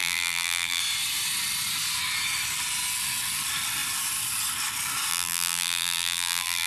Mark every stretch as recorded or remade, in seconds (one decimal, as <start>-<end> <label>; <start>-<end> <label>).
0.0-0.8 remade; 0.8-5.1 recorded; 5.1-6.7 remade